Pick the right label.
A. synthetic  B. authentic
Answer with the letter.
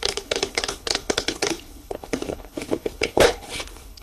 A